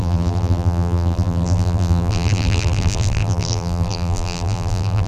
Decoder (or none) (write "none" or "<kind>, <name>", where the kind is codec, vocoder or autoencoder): vocoder, BigVGAN v2